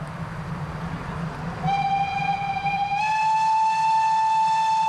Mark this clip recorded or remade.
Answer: recorded